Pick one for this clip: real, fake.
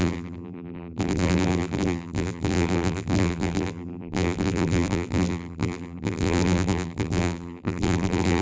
fake